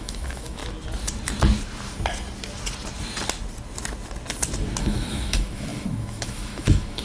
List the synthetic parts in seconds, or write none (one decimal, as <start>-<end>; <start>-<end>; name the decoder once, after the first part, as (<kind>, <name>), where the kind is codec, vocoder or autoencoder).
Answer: 0.0-0.6 (autoencoder, DAC-VAE); 4.8-7.0